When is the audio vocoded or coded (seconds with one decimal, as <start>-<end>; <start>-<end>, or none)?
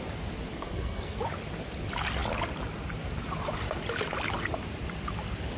0.5-1.2